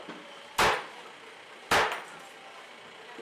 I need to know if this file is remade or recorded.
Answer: recorded